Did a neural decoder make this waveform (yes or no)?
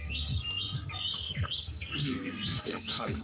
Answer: yes